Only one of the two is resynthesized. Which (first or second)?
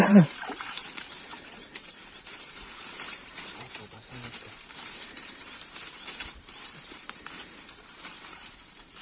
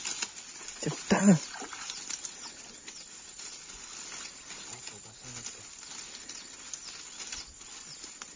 first